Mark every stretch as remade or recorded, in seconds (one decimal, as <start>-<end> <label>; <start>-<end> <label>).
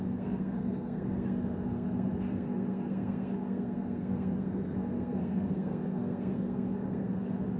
0.0-7.6 remade